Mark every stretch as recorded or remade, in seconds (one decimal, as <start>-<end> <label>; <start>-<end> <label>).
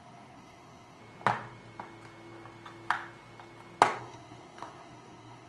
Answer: 0.0-1.0 remade; 1.0-4.0 recorded; 4.0-5.5 remade